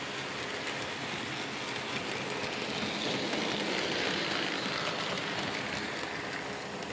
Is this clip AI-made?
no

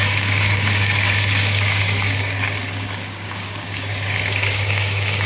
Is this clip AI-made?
yes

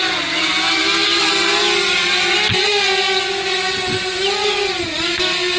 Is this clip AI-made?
no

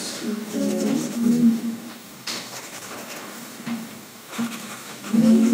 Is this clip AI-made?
yes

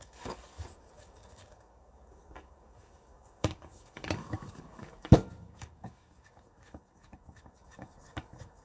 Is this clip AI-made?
yes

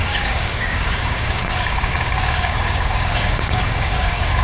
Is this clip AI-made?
yes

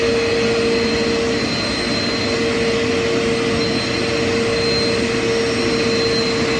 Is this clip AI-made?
no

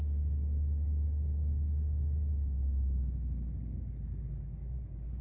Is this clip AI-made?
yes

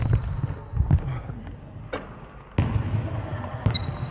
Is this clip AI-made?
no